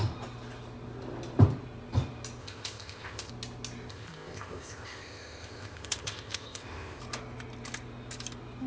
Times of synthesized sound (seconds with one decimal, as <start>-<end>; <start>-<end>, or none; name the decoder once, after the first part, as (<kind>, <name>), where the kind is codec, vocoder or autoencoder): 2.4-3.3 (codec, ZipCodec); 3.9-7.0

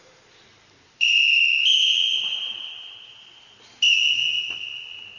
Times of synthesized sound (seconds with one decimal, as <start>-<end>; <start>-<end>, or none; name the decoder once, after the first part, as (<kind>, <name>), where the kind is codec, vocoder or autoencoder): 0.5-1.3 (vocoder, BigVGAN v2)

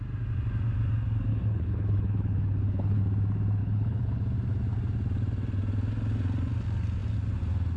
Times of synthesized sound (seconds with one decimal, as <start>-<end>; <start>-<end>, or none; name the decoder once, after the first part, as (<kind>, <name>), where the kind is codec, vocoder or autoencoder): 1.3-3.0 (codec, HILCodec); 3.6-4.2

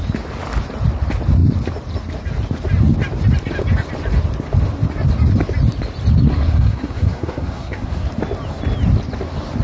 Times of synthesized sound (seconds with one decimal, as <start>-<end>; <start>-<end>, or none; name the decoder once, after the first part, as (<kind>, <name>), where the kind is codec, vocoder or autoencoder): 6.3-8.1 (codec, SNAC)

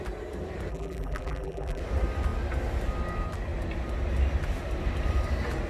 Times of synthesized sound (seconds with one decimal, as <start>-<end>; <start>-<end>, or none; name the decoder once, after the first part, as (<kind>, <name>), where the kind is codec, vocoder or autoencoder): 0.7-1.8 (vocoder, BigVGAN v2)